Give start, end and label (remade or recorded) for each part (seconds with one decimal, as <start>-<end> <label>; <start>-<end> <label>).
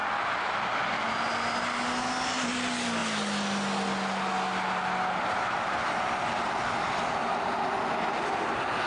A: 0.0-0.6 remade; 0.6-8.9 recorded